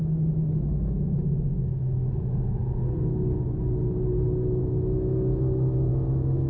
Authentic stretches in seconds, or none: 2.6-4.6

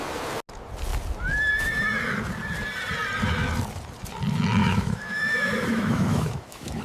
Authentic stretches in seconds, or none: 0.0-4.6

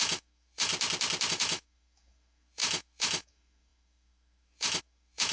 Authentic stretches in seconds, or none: 0.7-1.3